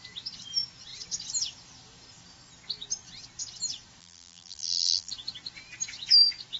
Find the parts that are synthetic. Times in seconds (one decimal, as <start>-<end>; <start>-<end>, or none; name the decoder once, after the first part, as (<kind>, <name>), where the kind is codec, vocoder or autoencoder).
4.0-5.1 (vocoder, BigVGAN v2)